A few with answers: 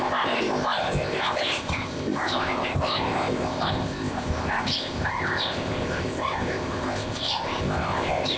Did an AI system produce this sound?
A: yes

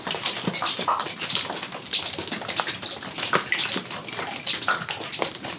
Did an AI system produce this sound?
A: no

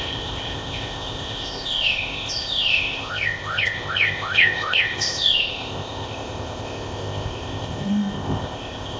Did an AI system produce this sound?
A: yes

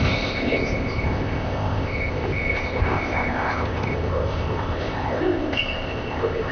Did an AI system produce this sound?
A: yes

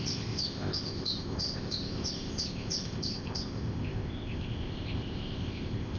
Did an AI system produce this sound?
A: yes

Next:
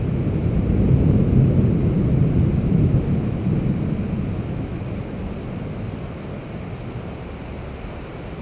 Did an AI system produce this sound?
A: no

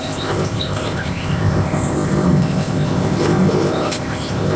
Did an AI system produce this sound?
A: yes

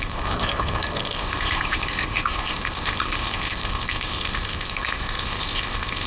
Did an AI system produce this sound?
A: yes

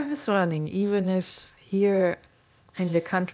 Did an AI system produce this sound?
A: yes